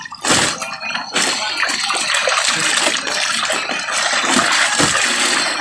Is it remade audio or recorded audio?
recorded